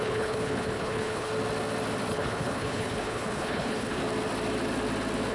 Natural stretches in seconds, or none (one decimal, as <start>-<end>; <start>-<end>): 1.3-2.1; 4.0-5.3